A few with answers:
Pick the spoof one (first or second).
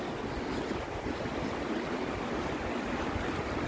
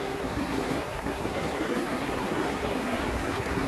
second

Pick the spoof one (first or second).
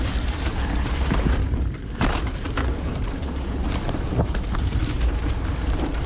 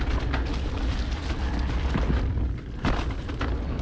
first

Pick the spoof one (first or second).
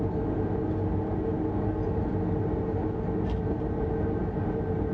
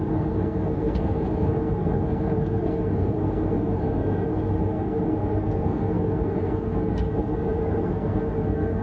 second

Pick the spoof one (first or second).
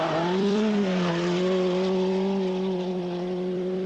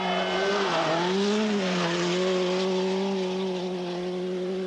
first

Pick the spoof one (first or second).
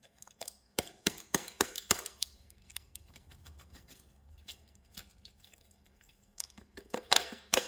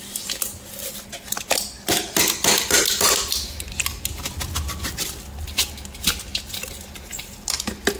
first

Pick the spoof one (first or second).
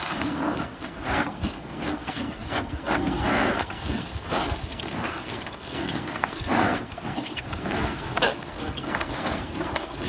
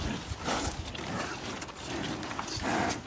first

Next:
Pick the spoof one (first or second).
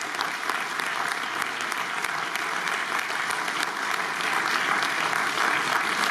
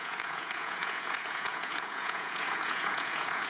second